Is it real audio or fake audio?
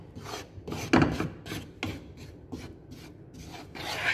real